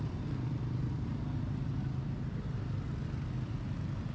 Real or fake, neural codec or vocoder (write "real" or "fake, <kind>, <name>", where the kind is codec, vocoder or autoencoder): real